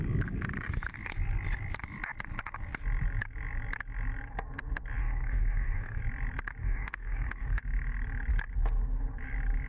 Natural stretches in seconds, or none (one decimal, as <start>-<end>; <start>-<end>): 0.0-5.0; 6.0-6.6; 7.6-9.7